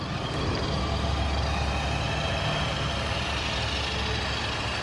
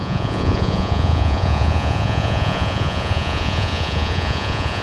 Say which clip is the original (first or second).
first